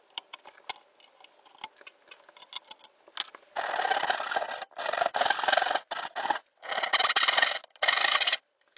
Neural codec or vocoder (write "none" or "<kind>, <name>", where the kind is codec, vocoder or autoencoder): none